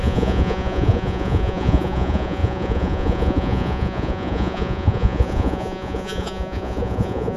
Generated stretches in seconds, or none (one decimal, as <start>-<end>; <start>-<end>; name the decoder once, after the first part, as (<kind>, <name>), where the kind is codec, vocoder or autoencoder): 0.0-7.4 (vocoder, Vocos)